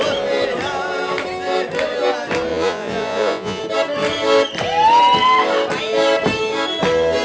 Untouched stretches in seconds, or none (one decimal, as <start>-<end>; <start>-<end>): 0.0-2.5; 3.6-7.2